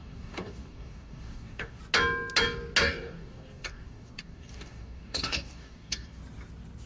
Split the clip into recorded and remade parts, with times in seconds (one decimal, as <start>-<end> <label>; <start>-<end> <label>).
0.0-1.8 remade; 1.8-2.8 recorded; 2.8-6.2 remade; 6.2-6.9 recorded